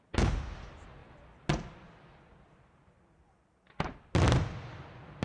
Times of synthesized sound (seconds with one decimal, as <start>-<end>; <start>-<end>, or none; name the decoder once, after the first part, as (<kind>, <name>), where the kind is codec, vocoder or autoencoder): none